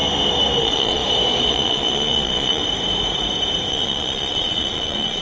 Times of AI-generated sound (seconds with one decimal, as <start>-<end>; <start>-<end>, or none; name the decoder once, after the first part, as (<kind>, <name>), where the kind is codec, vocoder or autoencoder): 0.6-1.0 (vocoder, Vocos); 1.5-2.6; 3.7-5.2